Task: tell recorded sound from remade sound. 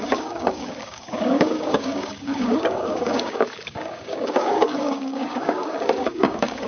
remade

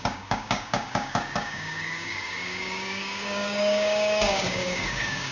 remade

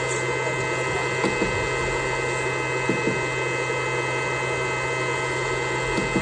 recorded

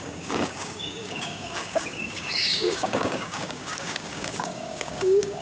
remade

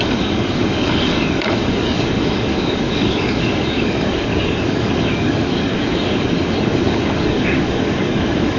remade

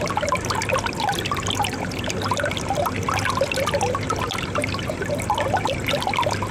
recorded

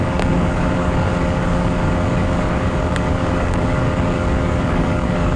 remade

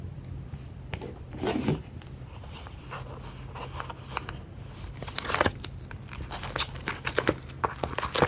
recorded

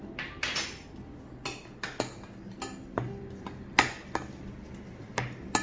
recorded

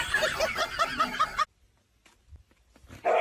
recorded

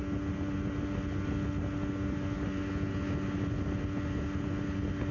recorded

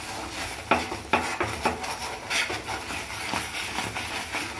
recorded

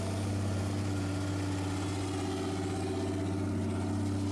recorded